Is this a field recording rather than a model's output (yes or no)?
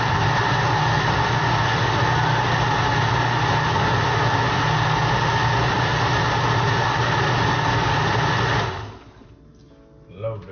yes